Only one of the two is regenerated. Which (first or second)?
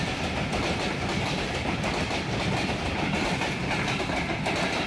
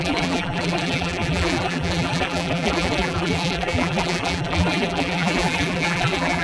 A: second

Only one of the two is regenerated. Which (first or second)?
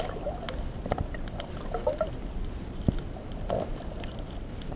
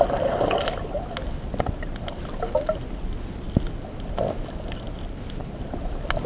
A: first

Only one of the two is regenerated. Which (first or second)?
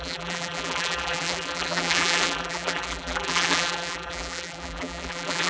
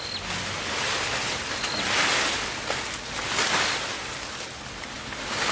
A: first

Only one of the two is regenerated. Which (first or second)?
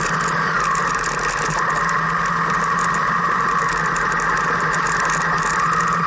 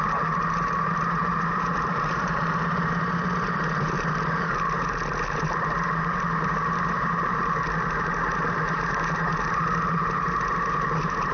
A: second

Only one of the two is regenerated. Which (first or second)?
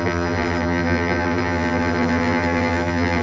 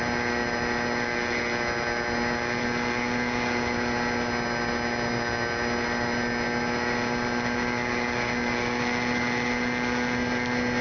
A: first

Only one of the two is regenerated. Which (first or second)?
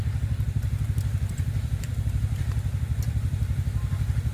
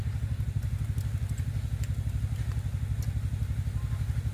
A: first